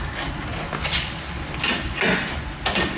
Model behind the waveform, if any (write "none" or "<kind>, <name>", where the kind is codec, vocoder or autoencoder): none